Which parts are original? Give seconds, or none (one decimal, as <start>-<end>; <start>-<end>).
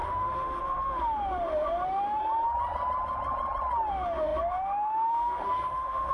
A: 2.2-3.9